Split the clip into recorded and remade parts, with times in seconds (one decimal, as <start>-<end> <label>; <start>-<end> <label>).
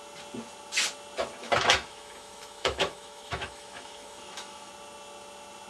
0.0-1.4 recorded; 1.4-4.7 remade; 4.7-5.7 recorded